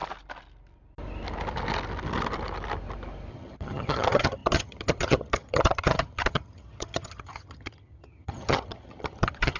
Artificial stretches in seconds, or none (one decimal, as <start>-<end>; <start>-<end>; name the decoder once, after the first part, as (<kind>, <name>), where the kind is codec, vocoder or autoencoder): 3.3-9.6 (vocoder, HiFi-GAN)